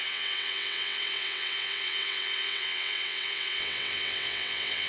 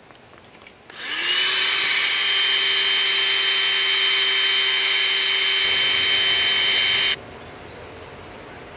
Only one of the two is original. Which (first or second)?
second